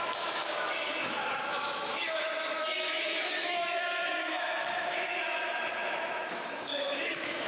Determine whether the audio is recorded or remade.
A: remade